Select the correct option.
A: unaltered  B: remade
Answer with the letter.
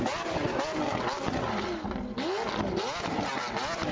A